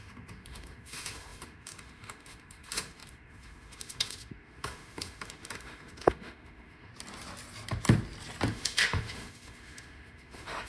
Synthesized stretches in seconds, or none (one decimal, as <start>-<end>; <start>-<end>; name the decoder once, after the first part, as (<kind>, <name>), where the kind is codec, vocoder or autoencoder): 0.0-6.9 (autoencoder, DAC-VAE); 8.5-10.7